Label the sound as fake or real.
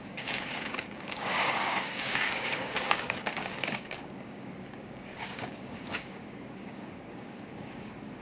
fake